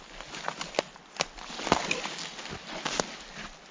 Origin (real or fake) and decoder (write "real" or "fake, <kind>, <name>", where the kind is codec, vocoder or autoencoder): real